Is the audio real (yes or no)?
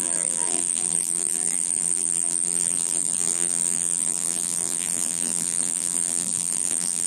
no